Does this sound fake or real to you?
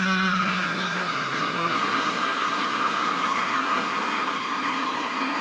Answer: fake